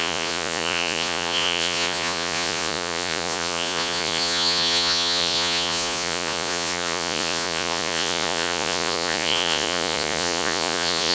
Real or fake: fake